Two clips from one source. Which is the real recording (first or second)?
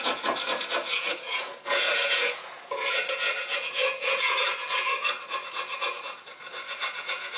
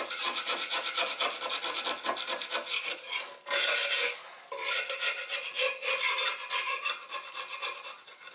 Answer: second